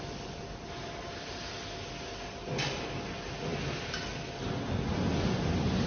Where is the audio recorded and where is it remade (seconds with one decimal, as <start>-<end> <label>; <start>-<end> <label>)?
0.0-5.9 recorded